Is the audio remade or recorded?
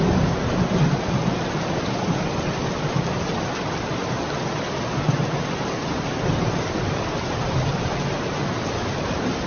recorded